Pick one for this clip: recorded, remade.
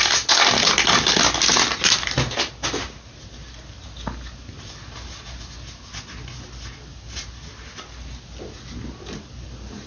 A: recorded